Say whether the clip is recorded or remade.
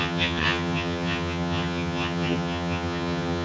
remade